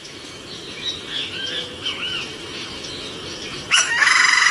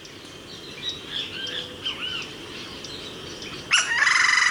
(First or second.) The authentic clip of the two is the second